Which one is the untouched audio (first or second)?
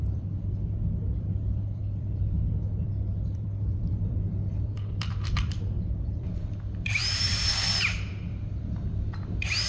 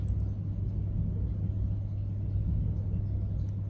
second